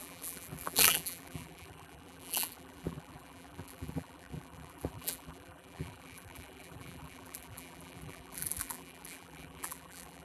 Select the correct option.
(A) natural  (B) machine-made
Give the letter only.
B